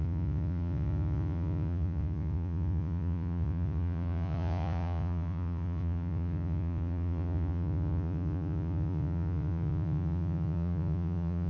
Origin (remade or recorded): remade